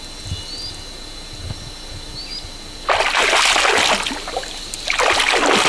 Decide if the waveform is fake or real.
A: real